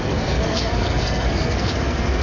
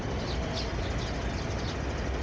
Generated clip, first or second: first